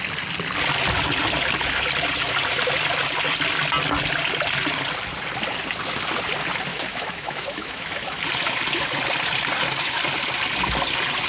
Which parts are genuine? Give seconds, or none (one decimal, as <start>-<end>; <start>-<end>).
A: 0.0-6.7; 8.2-11.3